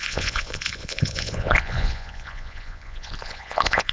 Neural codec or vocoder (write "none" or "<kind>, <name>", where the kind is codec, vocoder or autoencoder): vocoder, Vocos